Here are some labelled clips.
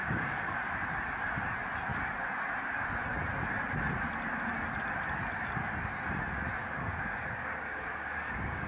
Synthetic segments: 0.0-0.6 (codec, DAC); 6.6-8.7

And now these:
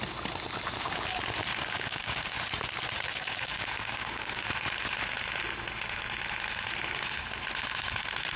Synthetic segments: 1.5-2.4 (codec, DAC); 3.1-4.5

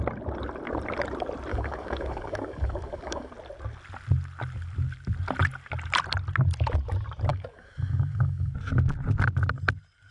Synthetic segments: 1.5-3.3 (codec, DAC); 7.3-8.5

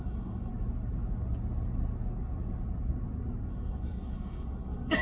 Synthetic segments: 0.0-0.5 (codec, DAC); 3.5-5.0